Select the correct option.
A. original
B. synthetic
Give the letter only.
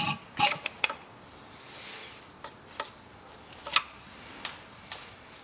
A